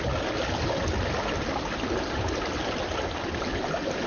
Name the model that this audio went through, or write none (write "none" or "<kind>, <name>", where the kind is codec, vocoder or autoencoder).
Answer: none